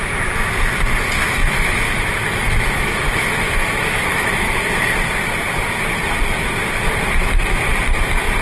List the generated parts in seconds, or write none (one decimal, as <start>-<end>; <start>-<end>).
1.2-4.6